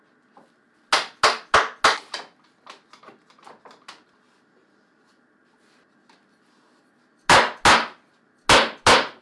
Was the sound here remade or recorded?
recorded